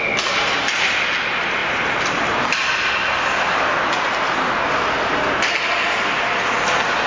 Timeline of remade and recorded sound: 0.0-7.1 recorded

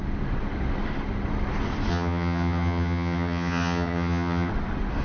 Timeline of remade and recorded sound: 0.0-1.9 recorded; 1.9-4.5 remade; 4.5-5.0 recorded

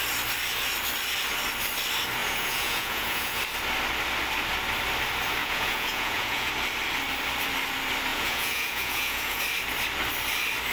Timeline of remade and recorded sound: 0.0-2.2 recorded; 2.2-3.4 remade; 3.4-5.4 recorded; 5.4-6.5 remade; 6.5-8.1 recorded; 8.1-9.4 remade; 9.4-10.7 recorded

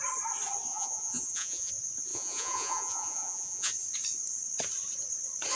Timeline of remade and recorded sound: 0.0-0.7 recorded; 0.7-1.7 remade; 1.7-2.1 recorded; 2.1-3.7 remade; 3.7-5.6 recorded

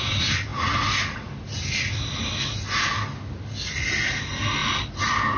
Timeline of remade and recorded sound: 0.0-5.4 recorded

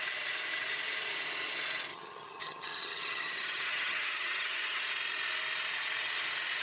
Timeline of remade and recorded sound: 0.0-1.9 recorded; 1.9-4.8 remade; 4.8-6.6 recorded